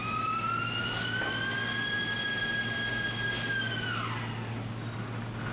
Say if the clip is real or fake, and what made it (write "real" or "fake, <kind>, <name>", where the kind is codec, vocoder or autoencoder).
real